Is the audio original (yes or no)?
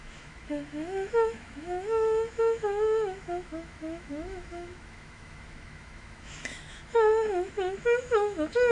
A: no